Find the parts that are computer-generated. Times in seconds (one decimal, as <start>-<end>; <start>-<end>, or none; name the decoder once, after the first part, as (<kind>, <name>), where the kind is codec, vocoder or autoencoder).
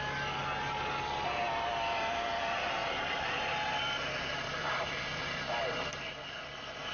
2.8-5.2 (vocoder, BigVGAN v2)